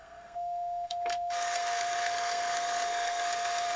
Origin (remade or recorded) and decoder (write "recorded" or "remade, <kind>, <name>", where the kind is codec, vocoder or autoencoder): remade, codec, SNAC